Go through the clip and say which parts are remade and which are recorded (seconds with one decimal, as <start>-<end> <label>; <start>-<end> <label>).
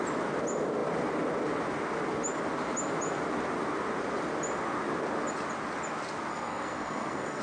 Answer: 0.0-6.3 recorded; 6.3-7.4 remade